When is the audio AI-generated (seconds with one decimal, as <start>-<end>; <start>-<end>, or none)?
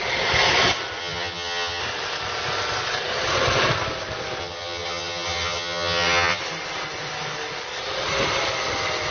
1.0-1.8; 4.4-6.4